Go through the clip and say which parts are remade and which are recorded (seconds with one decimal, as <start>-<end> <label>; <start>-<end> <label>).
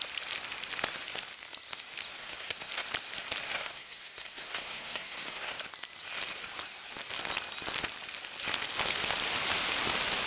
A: 0.0-2.2 recorded; 2.2-2.7 remade; 2.7-3.5 recorded; 3.5-5.6 remade; 5.6-10.3 recorded